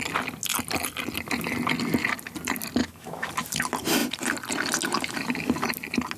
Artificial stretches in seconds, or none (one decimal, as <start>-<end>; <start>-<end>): 2.8-3.3